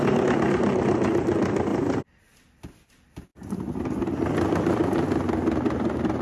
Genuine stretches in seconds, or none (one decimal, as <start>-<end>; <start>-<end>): 0.0-6.2